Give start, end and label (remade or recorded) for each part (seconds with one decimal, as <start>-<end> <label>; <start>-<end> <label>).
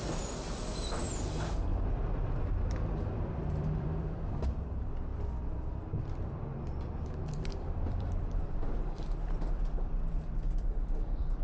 0.0-1.7 remade; 1.7-2.4 recorded; 2.4-5.1 remade; 5.1-7.2 recorded; 7.2-11.4 remade